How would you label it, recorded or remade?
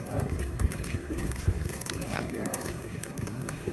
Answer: remade